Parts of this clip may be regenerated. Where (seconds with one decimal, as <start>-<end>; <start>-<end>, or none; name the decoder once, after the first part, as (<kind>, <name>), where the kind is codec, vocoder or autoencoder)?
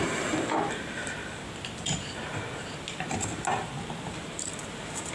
0.0-1.2 (vocoder, BigVGAN v2); 3.8-5.1